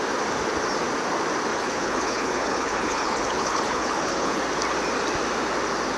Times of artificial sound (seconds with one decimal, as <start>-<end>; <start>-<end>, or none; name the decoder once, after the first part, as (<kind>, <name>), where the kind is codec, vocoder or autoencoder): 1.5-4.4 (codec, HILCodec)